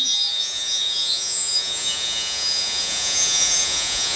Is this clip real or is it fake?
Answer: fake